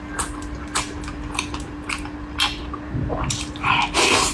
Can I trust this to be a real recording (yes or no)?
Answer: yes